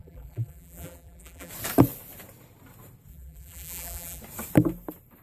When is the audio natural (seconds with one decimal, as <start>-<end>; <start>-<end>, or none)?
1.5-3.1; 4.2-5.2